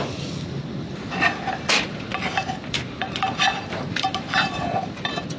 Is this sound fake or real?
real